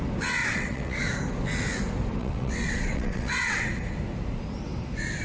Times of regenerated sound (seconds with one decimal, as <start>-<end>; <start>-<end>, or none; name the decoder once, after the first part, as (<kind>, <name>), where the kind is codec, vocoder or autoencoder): 0.4-1.0 (vocoder, WaveNeXt); 2.2-3.7